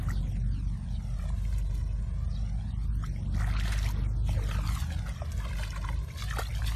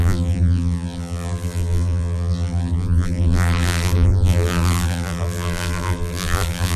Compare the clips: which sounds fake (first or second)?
second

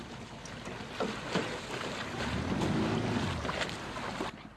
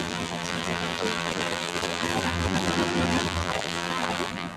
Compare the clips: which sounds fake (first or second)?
second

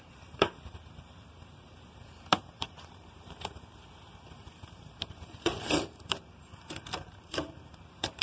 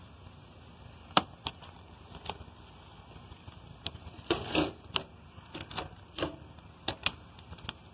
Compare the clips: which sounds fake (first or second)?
first